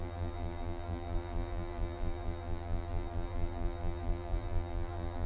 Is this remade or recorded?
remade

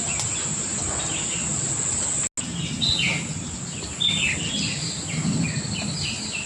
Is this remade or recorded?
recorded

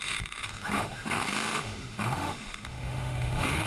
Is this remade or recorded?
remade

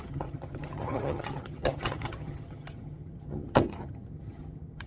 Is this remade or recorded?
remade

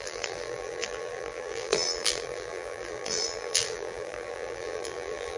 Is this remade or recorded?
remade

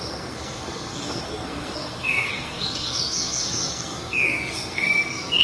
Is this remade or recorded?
remade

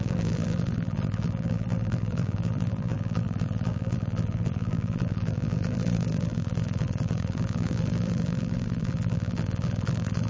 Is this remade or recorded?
remade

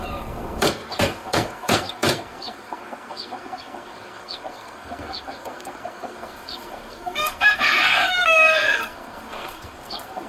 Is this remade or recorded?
remade